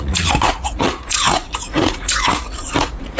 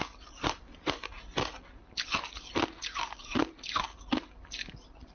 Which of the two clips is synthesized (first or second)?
first